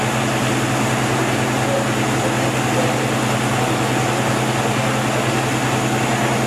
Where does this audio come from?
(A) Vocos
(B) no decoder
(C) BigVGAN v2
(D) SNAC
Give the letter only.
B